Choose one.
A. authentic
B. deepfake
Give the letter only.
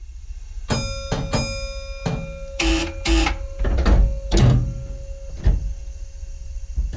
A